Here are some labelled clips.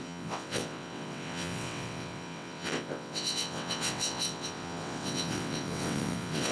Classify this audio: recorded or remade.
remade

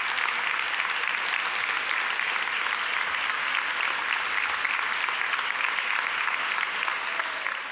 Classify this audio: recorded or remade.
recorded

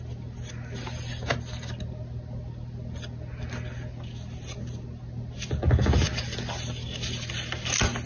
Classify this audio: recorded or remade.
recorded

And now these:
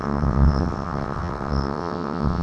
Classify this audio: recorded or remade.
remade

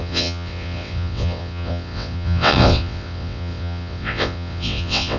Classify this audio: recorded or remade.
remade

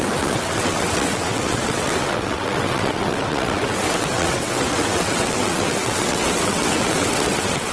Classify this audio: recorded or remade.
remade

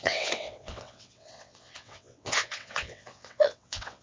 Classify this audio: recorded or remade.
remade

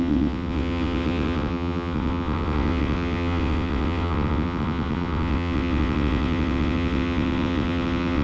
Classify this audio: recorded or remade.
remade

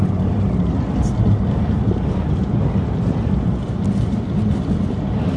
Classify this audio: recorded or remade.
recorded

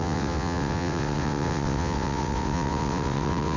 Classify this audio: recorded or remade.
remade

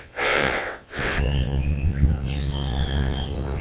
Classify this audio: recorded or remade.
remade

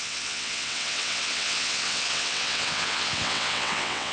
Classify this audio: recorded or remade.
remade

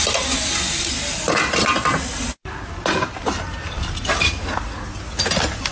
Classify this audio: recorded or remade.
recorded